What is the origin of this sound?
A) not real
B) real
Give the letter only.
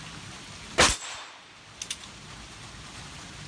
B